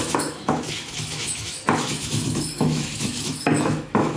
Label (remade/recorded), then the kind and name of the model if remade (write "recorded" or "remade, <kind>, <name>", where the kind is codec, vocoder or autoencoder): remade, autoencoder, DAC-VAE